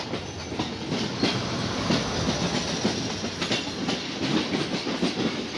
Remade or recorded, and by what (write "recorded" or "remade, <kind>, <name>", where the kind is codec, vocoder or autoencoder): recorded